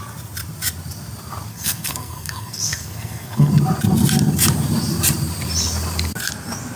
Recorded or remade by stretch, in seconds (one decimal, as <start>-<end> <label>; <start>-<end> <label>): 0.0-1.5 recorded; 1.5-3.5 remade; 3.5-6.8 recorded